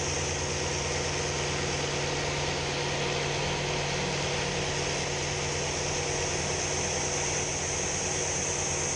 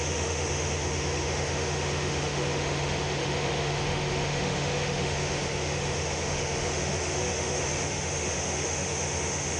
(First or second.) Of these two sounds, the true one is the first